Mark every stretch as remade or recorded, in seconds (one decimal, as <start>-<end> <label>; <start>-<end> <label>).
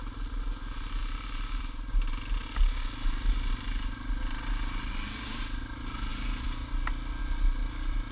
0.0-8.1 recorded